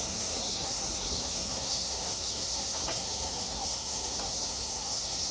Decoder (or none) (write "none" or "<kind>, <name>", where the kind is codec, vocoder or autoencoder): codec, SNAC